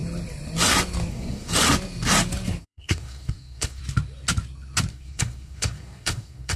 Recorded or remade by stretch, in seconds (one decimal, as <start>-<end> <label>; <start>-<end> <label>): 0.0-1.1 recorded; 1.1-1.5 remade; 1.5-2.6 recorded; 2.6-3.8 remade; 3.8-4.9 recorded; 4.9-6.6 remade